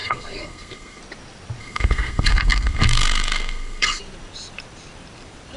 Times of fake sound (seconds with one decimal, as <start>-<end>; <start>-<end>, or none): 0.0-1.0; 1.6-4.0